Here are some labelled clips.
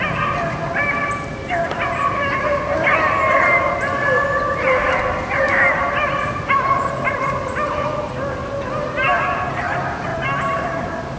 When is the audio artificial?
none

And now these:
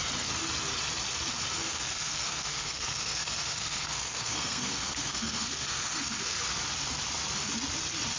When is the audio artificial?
1.6-6.4 (codec, SNAC)

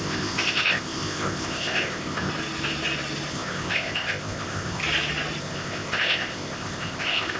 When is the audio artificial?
0.0-2.3 (codec, ZipCodec); 3.3-4.8; 5.4-7.4

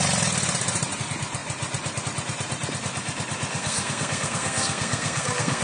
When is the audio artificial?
3.5-5.6 (codec, SNAC)